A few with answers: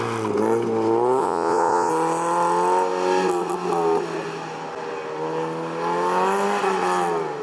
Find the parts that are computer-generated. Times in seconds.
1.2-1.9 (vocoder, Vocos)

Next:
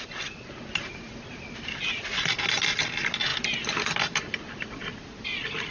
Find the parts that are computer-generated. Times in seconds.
none

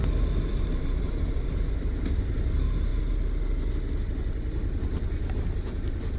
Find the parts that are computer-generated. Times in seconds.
0.5-1.9 (vocoder, BigVGAN v2)

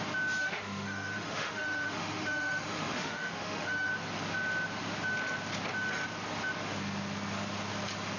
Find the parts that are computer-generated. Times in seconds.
0.4-3.9 (autoencoder, DAC-VAE)

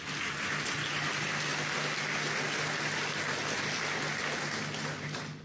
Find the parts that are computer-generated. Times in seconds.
none

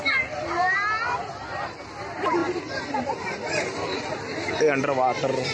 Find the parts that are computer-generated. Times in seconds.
2.4-4.5 (vocoder, BigVGAN v2)

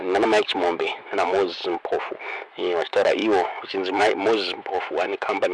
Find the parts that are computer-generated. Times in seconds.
0.0-1.6 (autoencoder, DAC-VAE); 2.2-5.5